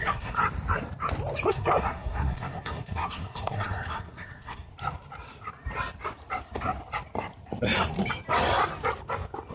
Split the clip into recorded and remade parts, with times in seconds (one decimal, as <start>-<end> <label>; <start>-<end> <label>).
0.0-0.4 remade; 0.4-1.5 recorded; 1.5-4.7 remade; 4.7-9.5 recorded